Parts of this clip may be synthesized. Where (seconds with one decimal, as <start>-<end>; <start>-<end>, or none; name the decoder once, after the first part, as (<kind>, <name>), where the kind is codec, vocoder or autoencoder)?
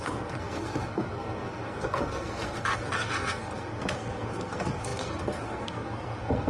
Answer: 0.0-6.5 (codec, SNAC)